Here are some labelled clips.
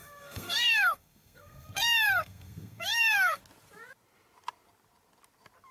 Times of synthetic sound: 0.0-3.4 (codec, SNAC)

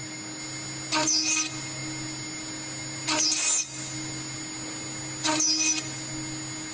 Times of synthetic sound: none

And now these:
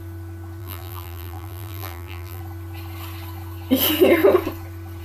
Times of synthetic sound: 0.6-2.4 (vocoder, BigVGAN v2)

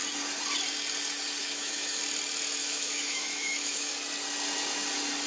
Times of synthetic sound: 1.4-2.0 (autoencoder, DAC-VAE); 2.6-3.9